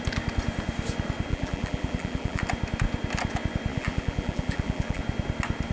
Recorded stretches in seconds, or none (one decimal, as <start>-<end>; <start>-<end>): 0.0-1.3; 2.4-3.7; 5.0-5.7